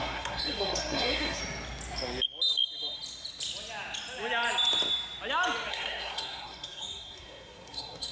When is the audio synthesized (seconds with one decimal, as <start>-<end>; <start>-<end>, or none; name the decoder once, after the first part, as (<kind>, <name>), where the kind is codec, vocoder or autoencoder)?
0.0-1.4 (codec, SNAC); 5.7-8.1